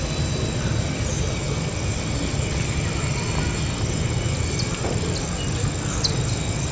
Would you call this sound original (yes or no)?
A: yes